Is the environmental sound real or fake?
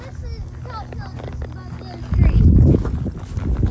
real